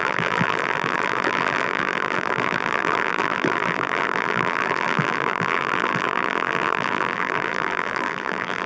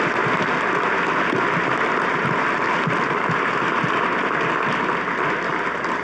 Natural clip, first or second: second